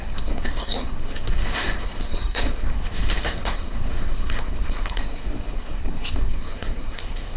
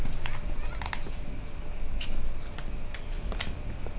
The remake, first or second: first